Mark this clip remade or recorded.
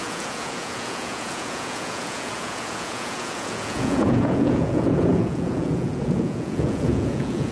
remade